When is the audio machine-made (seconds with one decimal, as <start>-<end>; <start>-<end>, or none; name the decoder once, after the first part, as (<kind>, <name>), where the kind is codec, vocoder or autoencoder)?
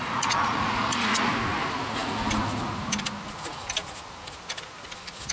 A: 0.0-1.3 (vocoder, Vocos)